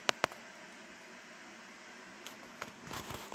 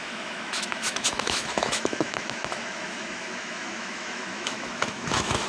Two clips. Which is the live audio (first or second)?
first